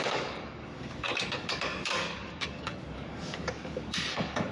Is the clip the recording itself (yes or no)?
no